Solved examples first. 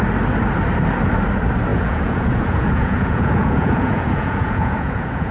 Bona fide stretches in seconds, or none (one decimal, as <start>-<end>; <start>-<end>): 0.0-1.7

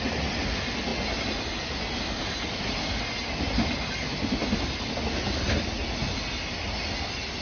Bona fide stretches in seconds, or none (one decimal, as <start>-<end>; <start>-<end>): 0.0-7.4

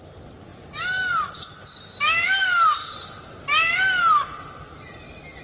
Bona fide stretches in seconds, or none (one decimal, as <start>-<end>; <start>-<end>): 0.0-5.4

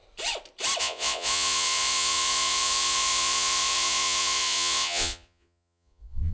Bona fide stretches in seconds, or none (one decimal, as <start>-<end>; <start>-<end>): 0.0-0.8

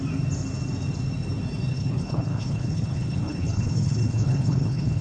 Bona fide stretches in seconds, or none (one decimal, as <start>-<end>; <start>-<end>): 0.0-1.7